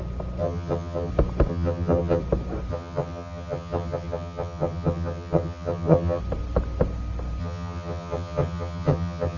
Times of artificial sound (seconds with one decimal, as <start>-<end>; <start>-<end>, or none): 0.4-1.1; 1.5-2.2; 2.7-6.2; 7.4-9.4